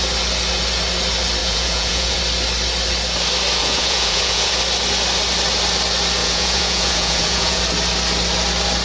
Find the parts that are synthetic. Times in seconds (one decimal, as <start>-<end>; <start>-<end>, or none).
1.4-2.2; 3.6-4.5; 6.2-7.6

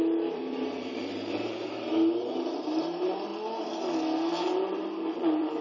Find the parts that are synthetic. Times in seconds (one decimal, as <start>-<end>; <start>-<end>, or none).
0.0-3.3; 4.3-5.6